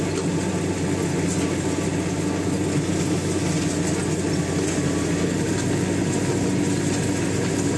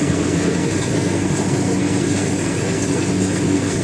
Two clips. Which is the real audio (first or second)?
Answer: first